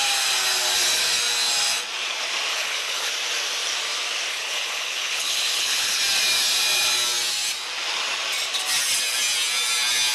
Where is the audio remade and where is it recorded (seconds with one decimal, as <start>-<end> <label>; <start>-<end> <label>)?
0.0-2.5 recorded; 2.5-3.1 remade; 3.1-4.3 recorded; 4.3-6.0 remade; 6.0-10.1 recorded